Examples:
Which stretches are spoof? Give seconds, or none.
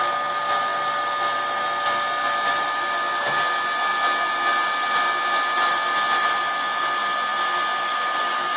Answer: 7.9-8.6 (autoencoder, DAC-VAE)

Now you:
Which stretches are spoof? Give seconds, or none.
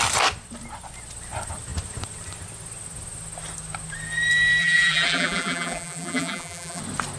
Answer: 4.6-6.8 (vocoder, BigVGAN v2)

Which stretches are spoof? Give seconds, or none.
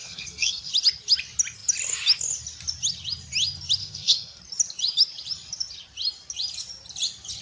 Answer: 0.0-0.7 (codec, SNAC); 3.8-4.4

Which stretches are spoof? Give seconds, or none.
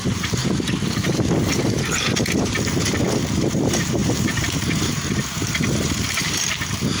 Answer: 0.0-0.4 (vocoder, BigVGAN v2); 3.5-7.0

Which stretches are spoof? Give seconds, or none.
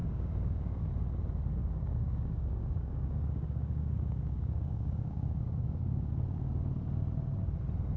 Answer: 0.0-0.9 (codec, DAC); 1.6-6.1